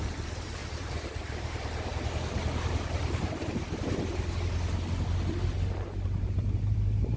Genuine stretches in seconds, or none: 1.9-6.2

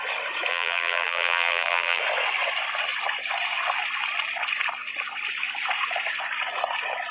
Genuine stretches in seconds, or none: 0.0-0.5; 2.0-7.1

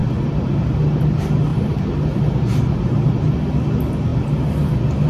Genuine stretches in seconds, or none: 0.6-1.5; 3.3-5.1

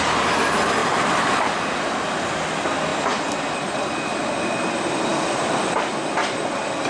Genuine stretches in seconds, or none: 0.0-0.8; 1.6-2.9; 3.9-5.1

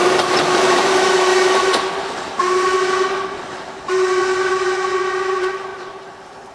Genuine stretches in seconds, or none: none

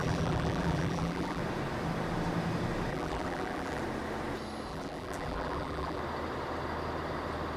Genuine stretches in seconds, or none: 1.4-2.9; 3.8-4.7; 6.0-7.6

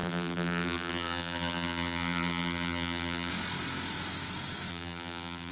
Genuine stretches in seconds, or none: 3.3-4.7

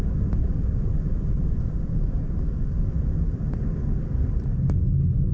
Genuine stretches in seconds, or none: 0.0-0.4; 3.6-5.3